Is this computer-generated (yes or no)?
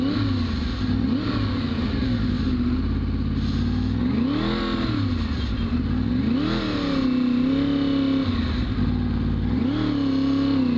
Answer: no